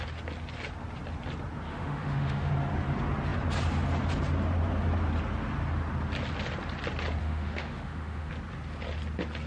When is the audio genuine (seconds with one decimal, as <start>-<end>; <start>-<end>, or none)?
0.0-1.7; 2.5-7.2; 8.3-9.5